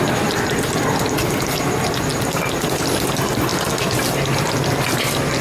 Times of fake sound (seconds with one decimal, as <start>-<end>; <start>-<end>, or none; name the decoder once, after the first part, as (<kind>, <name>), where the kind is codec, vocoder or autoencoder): none